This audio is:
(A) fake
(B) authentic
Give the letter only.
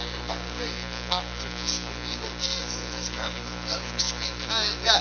A